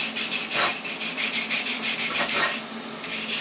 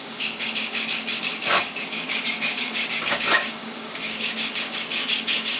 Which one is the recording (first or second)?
first